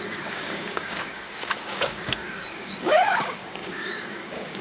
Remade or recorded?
remade